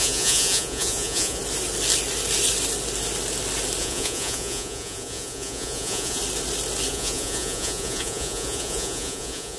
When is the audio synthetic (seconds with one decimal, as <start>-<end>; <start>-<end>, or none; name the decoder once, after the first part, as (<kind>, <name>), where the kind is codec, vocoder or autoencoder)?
0.0-1.4 (vocoder, Vocos); 3.8-6.2; 6.9-9.6

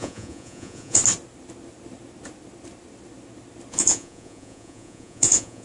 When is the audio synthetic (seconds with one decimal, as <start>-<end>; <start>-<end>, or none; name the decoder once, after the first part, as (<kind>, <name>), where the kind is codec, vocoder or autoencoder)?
0.0-1.0 (vocoder, Vocos); 3.7-5.6

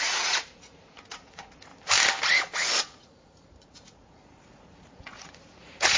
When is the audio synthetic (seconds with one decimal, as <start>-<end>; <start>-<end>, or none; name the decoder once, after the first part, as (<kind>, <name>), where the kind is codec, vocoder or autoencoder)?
0.0-1.7 (vocoder, Vocos); 2.8-6.0

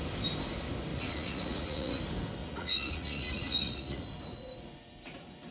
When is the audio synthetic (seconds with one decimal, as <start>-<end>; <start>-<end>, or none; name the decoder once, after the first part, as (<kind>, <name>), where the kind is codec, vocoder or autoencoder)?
0.9-2.0 (vocoder, Vocos); 2.4-5.5